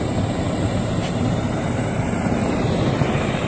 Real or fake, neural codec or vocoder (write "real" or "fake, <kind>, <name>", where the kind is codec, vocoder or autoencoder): fake, vocoder, BigVGAN v2